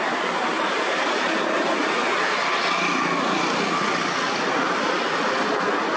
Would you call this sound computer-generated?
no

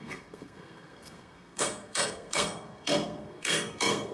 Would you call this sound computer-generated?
yes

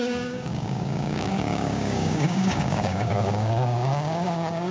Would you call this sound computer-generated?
yes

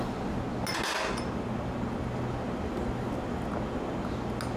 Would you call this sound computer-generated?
no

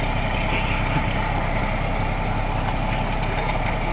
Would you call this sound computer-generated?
no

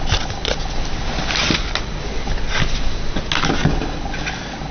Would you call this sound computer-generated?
no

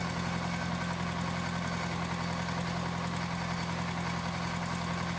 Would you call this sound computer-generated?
no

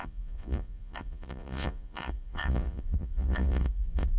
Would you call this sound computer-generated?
yes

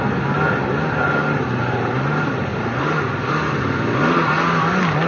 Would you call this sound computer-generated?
no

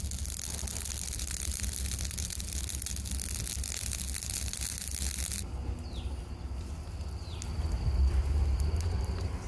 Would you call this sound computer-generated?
no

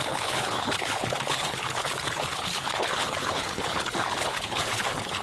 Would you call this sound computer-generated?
yes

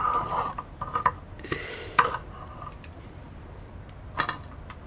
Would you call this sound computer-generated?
no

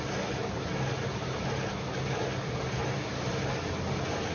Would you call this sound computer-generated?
no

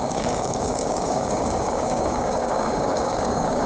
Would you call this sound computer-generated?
yes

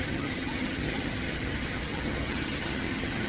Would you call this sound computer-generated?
yes